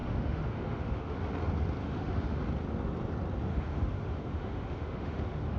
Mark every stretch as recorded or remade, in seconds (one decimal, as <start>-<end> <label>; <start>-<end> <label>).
0.0-1.2 remade; 1.2-1.8 recorded; 1.8-2.4 remade; 2.4-3.5 recorded; 3.5-5.6 remade